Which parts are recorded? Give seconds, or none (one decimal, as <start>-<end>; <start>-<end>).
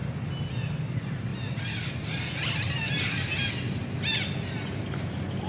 0.0-5.5